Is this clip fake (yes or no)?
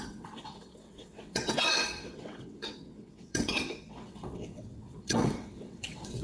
yes